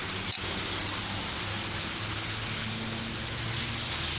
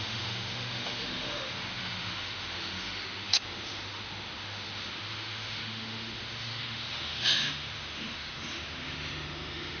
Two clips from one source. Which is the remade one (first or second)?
second